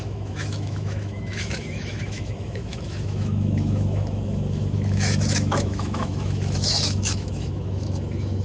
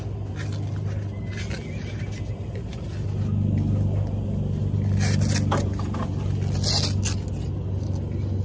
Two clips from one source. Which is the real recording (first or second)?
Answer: second